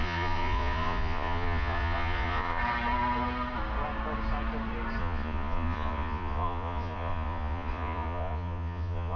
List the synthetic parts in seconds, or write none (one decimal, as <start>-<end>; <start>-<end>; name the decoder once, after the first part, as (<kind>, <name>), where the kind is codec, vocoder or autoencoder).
0.0-2.6 (vocoder, Vocos); 5.0-9.2

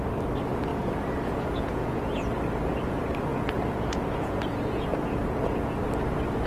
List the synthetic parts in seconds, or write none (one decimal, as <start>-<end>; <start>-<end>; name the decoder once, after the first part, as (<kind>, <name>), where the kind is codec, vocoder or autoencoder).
0.7-2.3 (vocoder, Vocos); 3.3-5.8